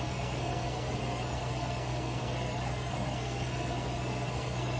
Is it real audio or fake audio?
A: fake